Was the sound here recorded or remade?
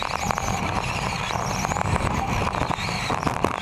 recorded